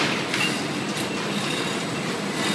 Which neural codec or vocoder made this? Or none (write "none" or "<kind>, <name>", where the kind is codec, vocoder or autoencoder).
none